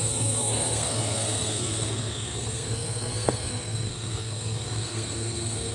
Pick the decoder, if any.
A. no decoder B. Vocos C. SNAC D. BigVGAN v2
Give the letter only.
C